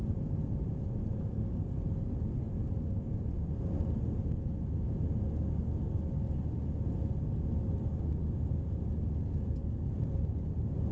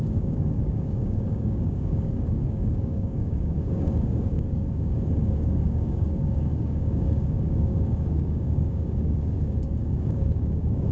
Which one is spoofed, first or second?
second